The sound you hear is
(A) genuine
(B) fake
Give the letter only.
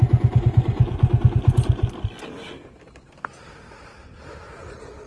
A